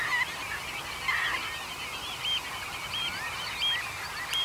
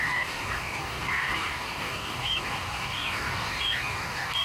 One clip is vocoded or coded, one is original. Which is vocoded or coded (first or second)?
second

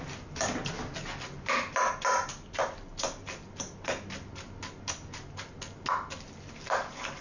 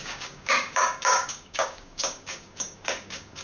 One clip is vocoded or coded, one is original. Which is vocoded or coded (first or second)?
second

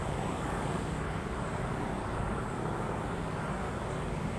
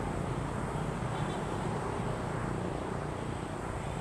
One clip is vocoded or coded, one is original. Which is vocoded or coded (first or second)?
first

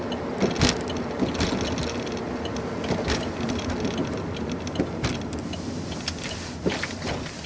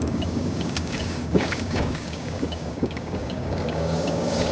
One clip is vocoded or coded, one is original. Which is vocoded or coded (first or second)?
second